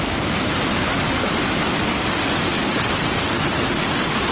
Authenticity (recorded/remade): recorded